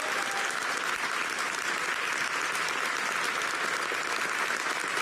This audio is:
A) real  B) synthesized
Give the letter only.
A